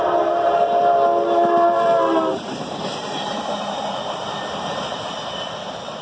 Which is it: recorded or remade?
remade